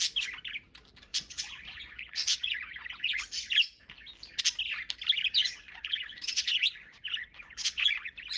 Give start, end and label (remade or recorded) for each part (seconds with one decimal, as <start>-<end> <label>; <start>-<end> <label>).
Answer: 0.0-1.1 recorded; 1.1-3.2 remade; 3.2-5.4 recorded; 5.4-8.4 remade